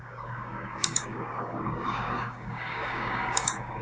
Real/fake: fake